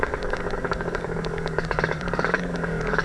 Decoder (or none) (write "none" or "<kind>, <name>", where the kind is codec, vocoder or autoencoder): codec, DAC